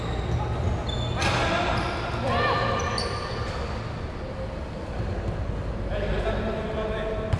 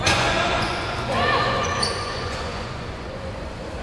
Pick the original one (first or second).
first